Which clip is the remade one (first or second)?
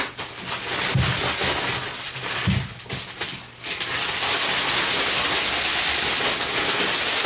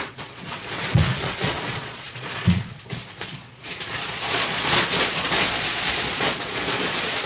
second